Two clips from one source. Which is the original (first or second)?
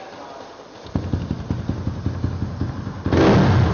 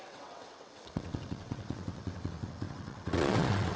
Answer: first